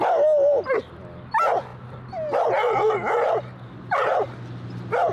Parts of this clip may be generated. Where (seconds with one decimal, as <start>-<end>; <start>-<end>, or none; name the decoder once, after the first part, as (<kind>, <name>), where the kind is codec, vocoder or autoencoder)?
none